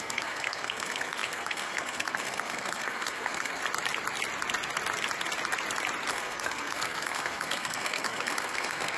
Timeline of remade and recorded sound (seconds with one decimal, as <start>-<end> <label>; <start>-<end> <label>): 0.0-3.6 remade; 3.6-6.1 recorded; 6.1-9.0 remade